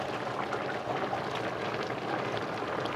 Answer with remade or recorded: recorded